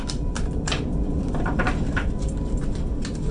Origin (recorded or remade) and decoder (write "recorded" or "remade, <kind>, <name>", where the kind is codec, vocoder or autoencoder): remade, vocoder, BigVGAN v2